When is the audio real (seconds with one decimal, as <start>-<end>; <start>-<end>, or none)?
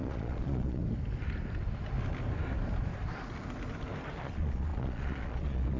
0.8-4.2